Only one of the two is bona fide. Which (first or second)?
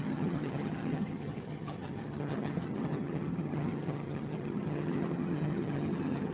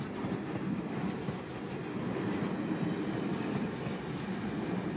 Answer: second